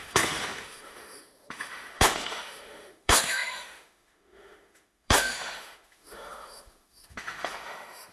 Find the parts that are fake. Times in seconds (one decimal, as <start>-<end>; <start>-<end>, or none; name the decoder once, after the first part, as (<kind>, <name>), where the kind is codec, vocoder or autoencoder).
0.0-8.1 (autoencoder, DAC-VAE)